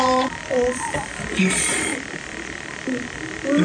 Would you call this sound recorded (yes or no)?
no